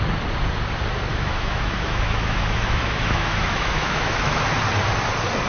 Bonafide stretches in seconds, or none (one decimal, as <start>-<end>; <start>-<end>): 0.0-1.1; 4.4-5.5